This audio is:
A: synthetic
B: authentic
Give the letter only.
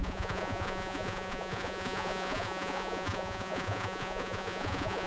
A